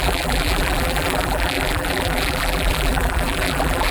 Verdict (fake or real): fake